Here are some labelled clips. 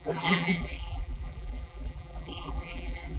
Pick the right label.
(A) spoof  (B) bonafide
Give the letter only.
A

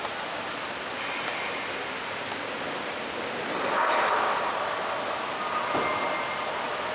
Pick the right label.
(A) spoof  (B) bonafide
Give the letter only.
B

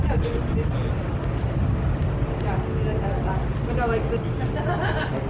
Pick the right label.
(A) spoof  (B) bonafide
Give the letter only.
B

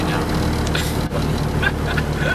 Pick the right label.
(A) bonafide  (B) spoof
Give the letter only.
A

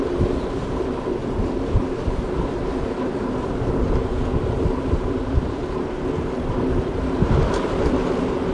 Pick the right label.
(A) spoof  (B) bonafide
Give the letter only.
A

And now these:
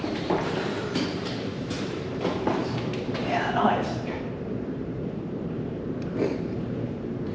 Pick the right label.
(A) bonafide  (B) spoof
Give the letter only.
B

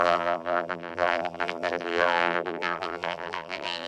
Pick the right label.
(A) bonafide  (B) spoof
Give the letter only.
B